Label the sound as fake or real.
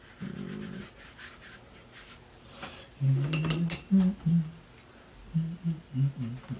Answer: real